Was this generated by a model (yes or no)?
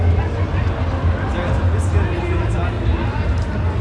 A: no